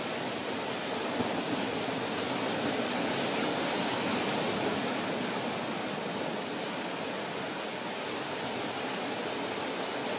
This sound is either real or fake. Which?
real